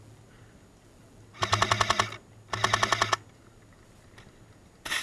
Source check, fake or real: real